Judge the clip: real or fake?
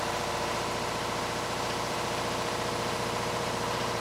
fake